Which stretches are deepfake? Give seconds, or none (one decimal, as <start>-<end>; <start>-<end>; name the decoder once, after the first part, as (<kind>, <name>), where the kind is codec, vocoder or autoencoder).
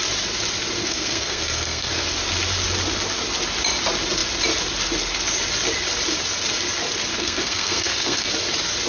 0.8-1.9 (codec, SNAC); 7.1-8.3